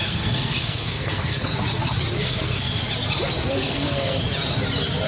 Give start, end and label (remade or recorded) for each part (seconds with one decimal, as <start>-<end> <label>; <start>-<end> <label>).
0.0-1.5 remade; 1.5-2.2 recorded; 2.2-2.8 remade; 2.8-3.5 recorded; 3.5-4.2 remade; 4.2-5.1 recorded